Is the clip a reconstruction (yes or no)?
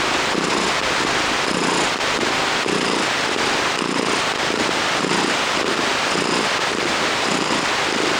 no